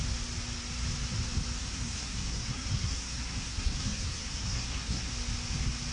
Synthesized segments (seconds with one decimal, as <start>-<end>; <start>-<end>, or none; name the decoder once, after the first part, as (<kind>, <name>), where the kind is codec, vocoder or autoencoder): 1.6-5.1 (codec, SNAC)